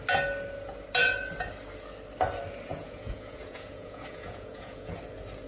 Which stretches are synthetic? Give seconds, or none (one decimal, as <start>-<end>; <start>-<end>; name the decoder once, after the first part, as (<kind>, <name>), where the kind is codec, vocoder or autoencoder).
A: 2.7-5.0 (vocoder, Vocos)